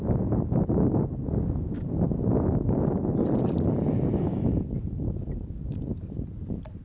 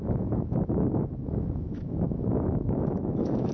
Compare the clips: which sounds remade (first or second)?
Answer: second